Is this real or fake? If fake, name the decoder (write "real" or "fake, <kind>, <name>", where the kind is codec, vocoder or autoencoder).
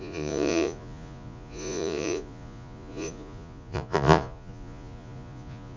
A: fake, vocoder, Vocos